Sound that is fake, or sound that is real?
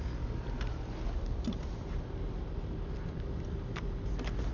real